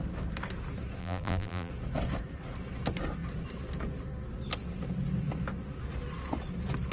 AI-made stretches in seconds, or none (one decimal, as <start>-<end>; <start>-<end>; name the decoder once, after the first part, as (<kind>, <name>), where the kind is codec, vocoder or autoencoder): 1.0-1.7 (vocoder, BigVGAN v2)